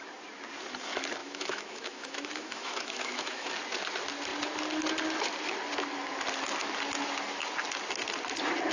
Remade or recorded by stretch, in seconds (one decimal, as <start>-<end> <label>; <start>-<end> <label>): 0.0-1.2 recorded; 1.2-3.5 remade; 3.5-8.7 recorded